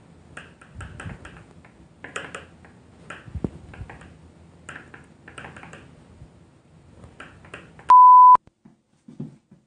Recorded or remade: recorded